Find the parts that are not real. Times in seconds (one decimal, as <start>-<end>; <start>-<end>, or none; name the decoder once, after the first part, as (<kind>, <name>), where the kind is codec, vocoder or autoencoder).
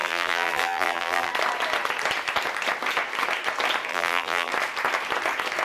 0.0-1.3 (vocoder, BigVGAN v2); 3.9-4.5